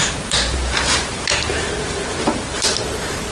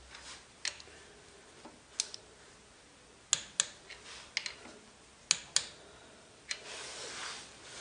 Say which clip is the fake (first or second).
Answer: first